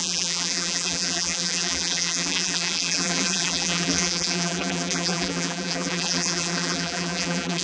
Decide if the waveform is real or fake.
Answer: fake